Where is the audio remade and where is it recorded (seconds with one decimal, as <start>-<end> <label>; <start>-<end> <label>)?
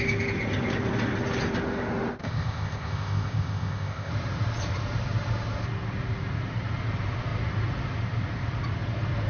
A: 0.0-2.2 recorded; 2.2-4.1 remade; 4.1-9.3 recorded